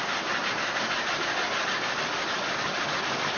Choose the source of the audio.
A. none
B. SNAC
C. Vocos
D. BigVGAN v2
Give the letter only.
A